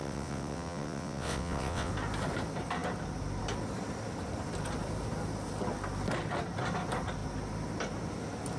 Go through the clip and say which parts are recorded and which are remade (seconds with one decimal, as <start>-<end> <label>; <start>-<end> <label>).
0.0-1.9 remade; 1.9-8.6 recorded